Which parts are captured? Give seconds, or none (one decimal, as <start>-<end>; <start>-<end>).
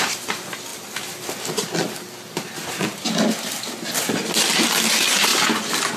0.0-6.0